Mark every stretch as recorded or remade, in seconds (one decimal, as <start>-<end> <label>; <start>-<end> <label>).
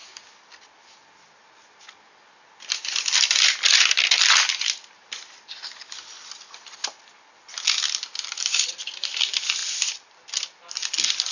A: 0.0-11.3 recorded